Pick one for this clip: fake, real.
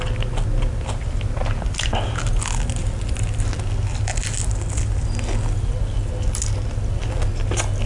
real